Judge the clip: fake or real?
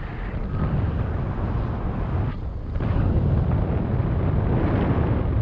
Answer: real